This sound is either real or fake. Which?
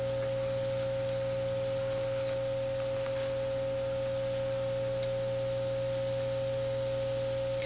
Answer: real